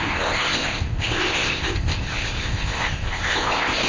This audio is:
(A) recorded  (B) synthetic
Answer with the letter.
B